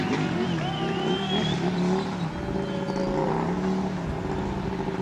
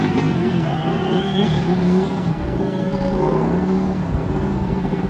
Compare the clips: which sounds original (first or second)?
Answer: first